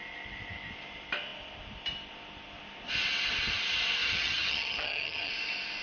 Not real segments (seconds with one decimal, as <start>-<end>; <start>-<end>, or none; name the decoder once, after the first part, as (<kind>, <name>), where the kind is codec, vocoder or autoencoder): 4.0-5.3 (vocoder, HiFi-GAN)